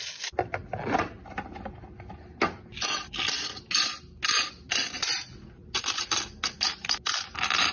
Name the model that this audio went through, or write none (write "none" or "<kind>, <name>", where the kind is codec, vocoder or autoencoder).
none